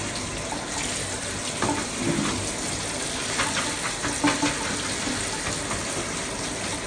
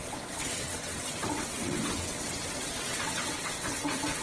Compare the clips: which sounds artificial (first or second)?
second